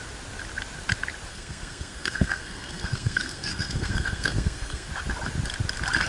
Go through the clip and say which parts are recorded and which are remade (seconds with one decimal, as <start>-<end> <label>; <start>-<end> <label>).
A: 0.0-1.3 recorded; 1.3-4.9 remade; 4.9-6.1 recorded